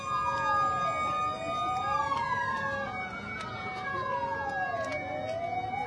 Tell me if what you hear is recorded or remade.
recorded